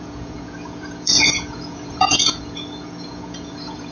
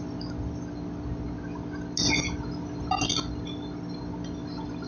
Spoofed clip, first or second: first